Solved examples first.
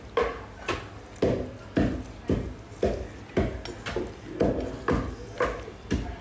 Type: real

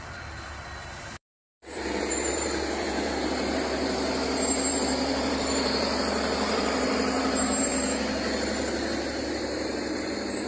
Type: fake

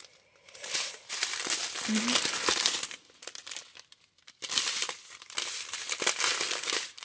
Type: fake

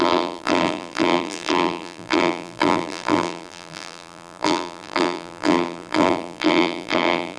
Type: fake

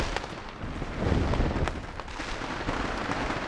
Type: real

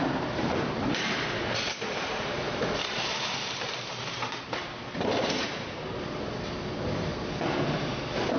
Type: fake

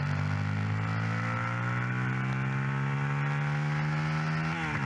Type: real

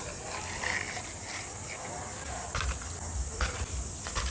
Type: real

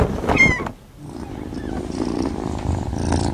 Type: fake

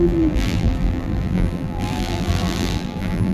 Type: fake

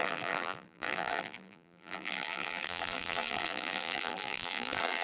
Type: fake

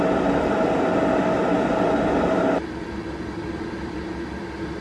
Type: real